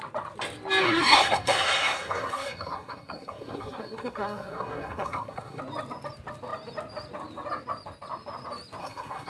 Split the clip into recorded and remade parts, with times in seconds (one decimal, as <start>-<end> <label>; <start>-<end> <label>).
0.0-0.8 recorded; 0.8-5.6 remade; 5.6-8.8 recorded; 8.8-9.3 remade